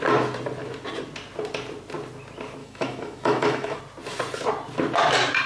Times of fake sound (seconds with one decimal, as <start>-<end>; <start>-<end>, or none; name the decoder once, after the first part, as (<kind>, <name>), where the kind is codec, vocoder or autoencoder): 2.6-3.8 (autoencoder, DAC-VAE)